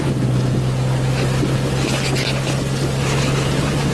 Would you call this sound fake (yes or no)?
no